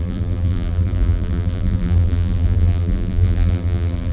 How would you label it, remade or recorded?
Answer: remade